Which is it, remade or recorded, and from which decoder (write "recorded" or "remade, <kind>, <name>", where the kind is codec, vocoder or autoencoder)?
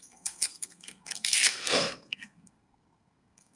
remade, codec, SNAC